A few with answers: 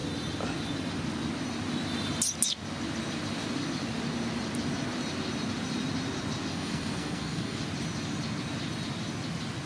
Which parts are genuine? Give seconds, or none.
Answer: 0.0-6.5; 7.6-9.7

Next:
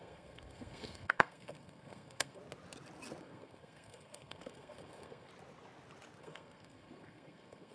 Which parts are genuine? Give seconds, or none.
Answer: 2.4-3.2; 5.3-6.2

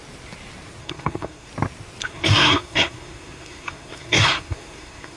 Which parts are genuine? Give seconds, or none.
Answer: 0.0-0.8; 1.5-2.0

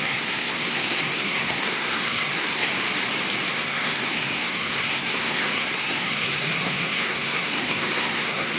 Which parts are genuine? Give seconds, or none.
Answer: 2.7-3.5

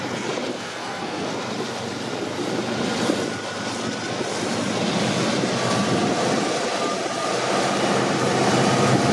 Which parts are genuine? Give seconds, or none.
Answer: 0.0-0.5; 1.3-9.1

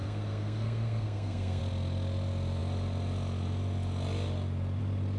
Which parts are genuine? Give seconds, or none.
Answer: 1.6-5.2